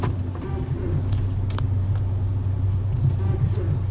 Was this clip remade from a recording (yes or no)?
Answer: no